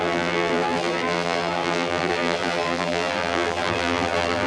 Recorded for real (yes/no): no